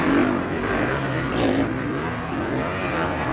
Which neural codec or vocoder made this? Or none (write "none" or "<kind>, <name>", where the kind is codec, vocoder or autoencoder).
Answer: none